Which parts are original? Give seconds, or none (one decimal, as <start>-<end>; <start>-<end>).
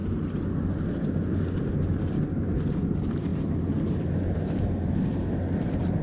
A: 0.0-6.0